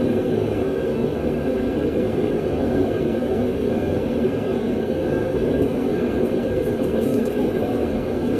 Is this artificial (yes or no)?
yes